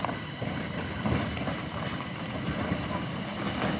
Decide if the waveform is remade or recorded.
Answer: recorded